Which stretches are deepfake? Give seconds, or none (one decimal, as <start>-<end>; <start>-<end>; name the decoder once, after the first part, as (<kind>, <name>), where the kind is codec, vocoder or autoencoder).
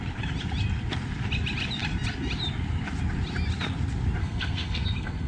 4.2-5.3 (codec, SNAC)